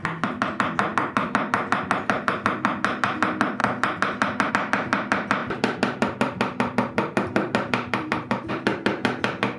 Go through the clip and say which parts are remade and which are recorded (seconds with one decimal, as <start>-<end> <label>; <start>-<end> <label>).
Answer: 0.0-0.9 recorded; 0.9-2.3 remade; 2.3-5.4 recorded; 5.4-8.5 remade; 8.5-9.6 recorded